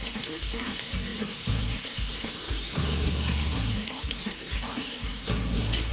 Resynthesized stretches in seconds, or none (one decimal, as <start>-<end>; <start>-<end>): 0.0-5.9